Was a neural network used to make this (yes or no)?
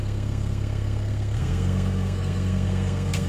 yes